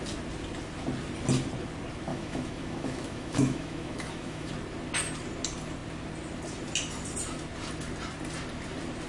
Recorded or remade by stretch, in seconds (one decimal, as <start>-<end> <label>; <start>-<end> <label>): 0.0-2.1 recorded; 2.1-4.5 remade; 4.5-9.1 recorded